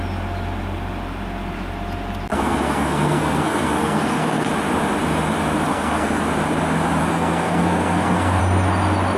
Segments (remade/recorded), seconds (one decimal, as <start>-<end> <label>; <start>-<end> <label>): 0.0-2.3 recorded; 2.3-4.5 remade; 4.5-5.7 recorded; 5.7-6.2 remade; 6.2-7.0 recorded; 7.0-8.4 remade; 8.4-9.2 recorded